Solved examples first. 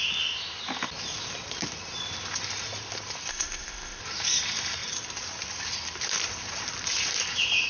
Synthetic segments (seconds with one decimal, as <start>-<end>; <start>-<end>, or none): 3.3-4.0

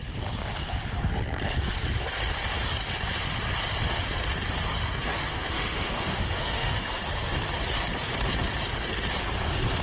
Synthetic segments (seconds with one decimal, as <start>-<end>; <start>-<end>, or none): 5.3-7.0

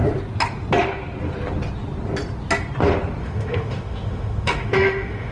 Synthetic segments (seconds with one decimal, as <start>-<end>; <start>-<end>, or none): 3.2-5.3

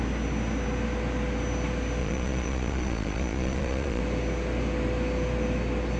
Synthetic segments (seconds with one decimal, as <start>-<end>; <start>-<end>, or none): 2.0-4.0

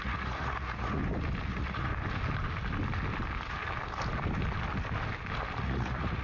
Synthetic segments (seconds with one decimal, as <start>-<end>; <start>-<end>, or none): 0.0-1.0; 1.5-1.9; 5.6-6.2

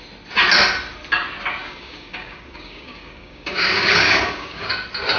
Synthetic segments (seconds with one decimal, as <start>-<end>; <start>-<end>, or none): 1.6-4.7